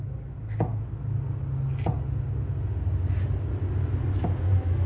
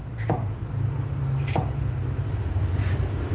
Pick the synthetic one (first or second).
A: second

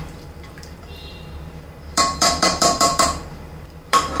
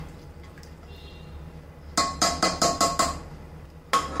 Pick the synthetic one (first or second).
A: first